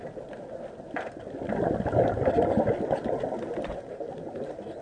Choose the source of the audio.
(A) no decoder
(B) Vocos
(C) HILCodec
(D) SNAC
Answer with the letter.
A